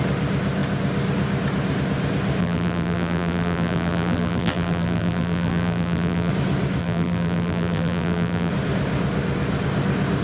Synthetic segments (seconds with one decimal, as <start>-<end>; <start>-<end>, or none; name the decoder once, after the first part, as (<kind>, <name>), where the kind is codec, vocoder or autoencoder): 2.4-6.3 (vocoder, BigVGAN v2); 6.8-8.5